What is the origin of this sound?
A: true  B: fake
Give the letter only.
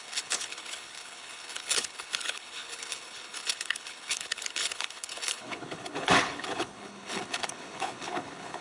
B